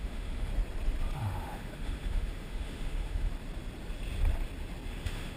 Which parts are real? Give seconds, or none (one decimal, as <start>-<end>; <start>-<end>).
0.5-1.2; 3.3-4.9